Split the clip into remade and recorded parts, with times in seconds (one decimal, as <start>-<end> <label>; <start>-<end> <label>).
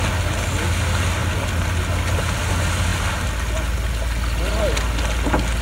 0.0-5.6 recorded